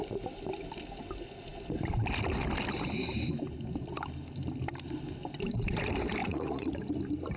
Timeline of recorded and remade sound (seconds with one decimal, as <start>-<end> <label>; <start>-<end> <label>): 0.0-6.2 recorded; 6.2-6.8 remade; 6.8-7.4 recorded